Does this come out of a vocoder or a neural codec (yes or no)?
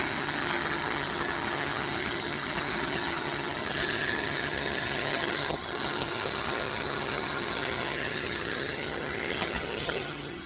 yes